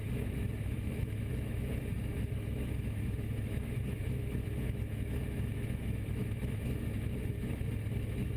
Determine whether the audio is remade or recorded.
remade